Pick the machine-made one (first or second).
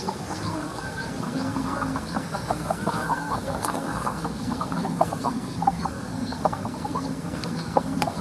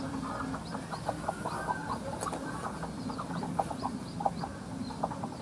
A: first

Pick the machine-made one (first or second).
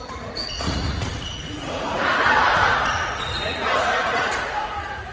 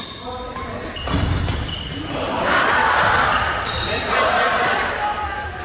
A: first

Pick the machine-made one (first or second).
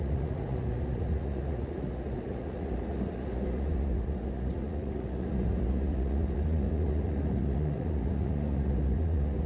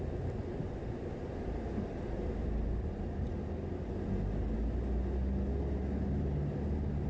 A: first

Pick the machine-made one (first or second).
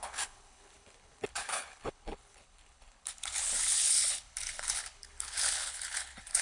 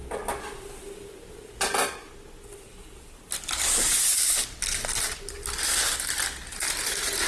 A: first